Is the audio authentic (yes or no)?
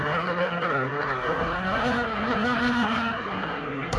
no